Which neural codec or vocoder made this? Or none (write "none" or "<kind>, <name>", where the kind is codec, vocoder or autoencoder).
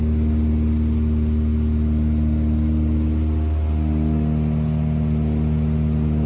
none